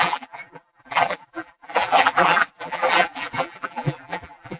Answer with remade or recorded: remade